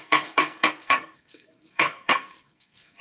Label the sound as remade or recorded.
remade